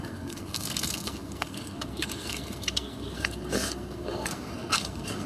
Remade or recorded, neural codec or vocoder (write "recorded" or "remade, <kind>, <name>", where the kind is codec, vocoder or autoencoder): remade, codec, SNAC